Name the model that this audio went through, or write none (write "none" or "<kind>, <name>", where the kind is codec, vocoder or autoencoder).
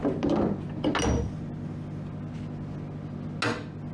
none